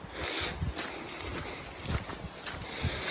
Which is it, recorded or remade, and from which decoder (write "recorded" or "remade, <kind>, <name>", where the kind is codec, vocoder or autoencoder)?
recorded